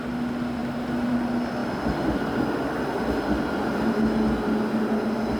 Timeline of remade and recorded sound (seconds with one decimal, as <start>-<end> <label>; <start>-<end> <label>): 0.0-5.4 recorded